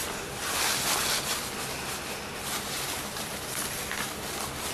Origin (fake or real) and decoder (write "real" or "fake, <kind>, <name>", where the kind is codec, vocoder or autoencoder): real